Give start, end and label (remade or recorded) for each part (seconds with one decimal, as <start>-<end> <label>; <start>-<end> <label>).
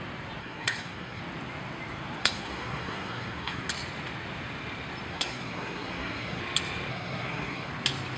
0.0-0.4 recorded; 0.4-1.2 remade; 1.2-2.2 recorded; 2.2-3.7 remade; 3.7-5.1 recorded; 5.1-6.4 remade; 6.4-6.9 recorded; 6.9-7.7 remade; 7.7-8.2 recorded